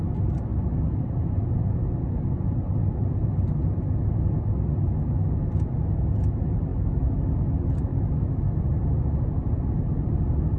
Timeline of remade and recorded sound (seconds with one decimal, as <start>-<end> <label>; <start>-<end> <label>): 0.0-7.9 recorded; 7.9-8.5 remade; 8.5-10.6 recorded